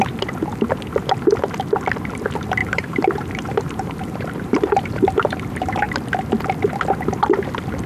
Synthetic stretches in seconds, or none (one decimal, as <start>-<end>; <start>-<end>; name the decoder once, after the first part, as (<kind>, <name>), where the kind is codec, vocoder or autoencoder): 2.6-5.9 (vocoder, BigVGAN v2)